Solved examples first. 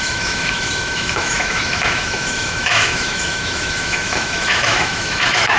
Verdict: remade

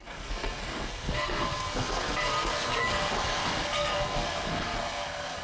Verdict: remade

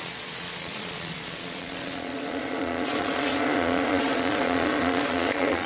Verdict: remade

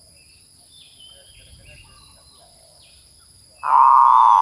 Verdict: recorded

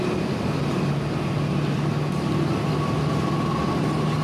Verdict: recorded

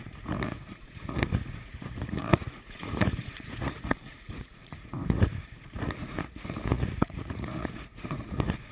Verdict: remade